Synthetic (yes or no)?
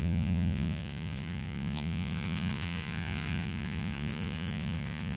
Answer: yes